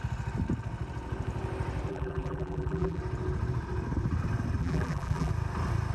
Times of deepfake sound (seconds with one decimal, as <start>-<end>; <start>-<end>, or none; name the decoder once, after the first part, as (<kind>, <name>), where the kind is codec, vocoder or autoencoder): 1.9-3.0 (vocoder, BigVGAN v2); 4.6-5.3